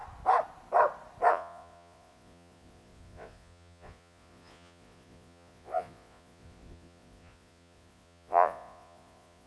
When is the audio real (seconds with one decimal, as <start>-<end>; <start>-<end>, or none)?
0.0-1.3